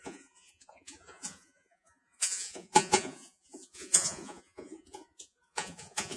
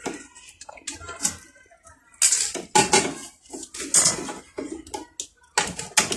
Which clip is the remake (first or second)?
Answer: first